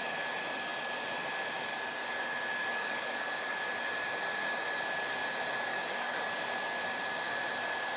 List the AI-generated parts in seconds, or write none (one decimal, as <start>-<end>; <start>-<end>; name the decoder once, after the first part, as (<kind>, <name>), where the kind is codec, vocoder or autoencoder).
2.7-3.5 (codec, DAC); 5.7-6.3